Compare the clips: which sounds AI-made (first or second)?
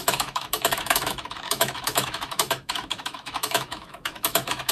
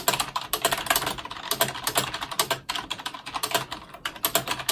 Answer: first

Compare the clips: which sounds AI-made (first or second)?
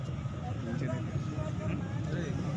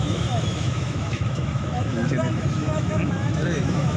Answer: second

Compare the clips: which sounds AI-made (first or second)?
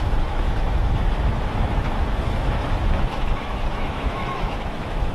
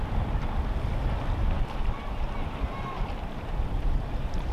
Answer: first